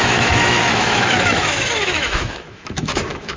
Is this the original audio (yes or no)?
no